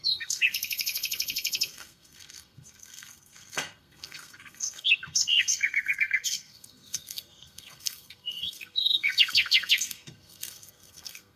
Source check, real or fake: fake